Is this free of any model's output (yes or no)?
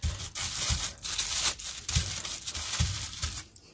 yes